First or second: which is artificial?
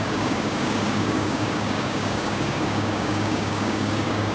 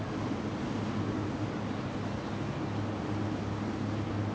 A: first